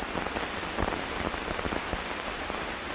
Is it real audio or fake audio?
real